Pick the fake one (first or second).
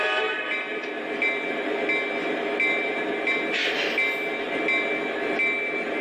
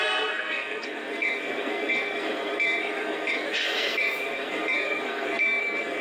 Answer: second